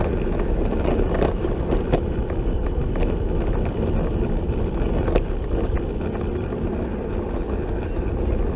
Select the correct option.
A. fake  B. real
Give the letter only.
B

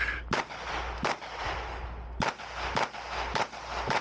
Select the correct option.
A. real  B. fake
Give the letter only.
A